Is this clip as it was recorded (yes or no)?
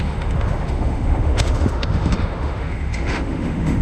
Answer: no